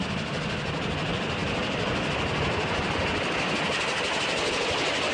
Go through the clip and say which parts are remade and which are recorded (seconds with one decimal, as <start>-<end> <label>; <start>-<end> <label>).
0.0-5.1 recorded